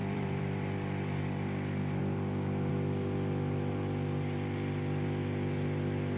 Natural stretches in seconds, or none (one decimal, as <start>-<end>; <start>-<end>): 1.2-6.2